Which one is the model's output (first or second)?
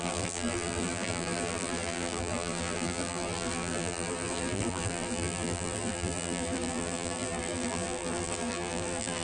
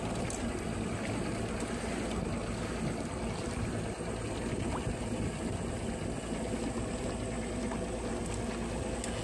first